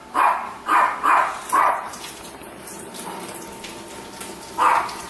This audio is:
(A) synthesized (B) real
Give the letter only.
B